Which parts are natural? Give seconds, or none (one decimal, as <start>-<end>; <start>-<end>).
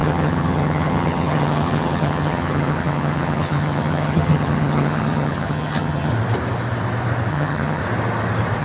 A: 6.1-7.3; 7.8-8.6